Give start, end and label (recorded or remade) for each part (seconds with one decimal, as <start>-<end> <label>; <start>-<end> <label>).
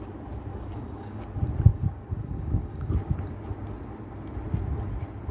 0.0-0.5 recorded; 0.5-1.2 remade; 1.2-1.7 recorded; 1.7-2.9 remade; 2.9-5.3 recorded